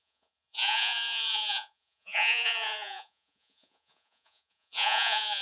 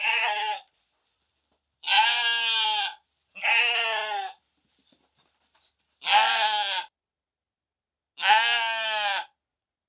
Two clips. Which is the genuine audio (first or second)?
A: second